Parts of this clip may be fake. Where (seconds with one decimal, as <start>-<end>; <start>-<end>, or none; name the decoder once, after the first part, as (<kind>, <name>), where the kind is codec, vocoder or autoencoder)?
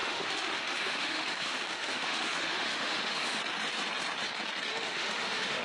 0.0-3.4 (autoencoder, DAC-VAE); 4.7-5.6